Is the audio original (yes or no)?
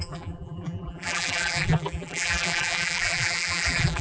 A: no